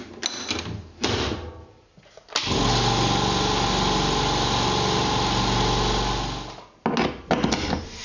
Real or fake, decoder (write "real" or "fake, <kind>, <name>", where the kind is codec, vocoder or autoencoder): real